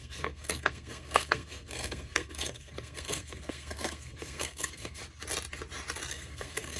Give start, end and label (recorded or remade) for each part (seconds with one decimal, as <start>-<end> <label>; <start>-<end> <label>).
0.0-5.0 remade; 5.0-6.1 recorded; 6.1-6.8 remade